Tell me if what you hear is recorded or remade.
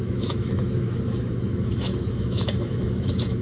remade